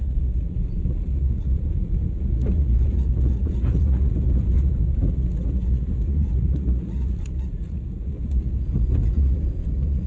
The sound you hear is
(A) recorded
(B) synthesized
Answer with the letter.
B